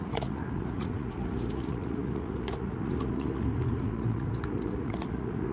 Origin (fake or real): fake